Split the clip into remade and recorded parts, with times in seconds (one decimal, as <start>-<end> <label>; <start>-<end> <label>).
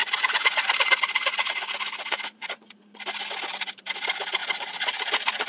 0.0-3.0 remade; 3.0-4.4 recorded; 4.4-5.5 remade